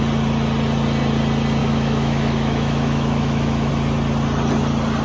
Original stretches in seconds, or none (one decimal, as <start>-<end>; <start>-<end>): 0.0-1.6; 3.7-5.0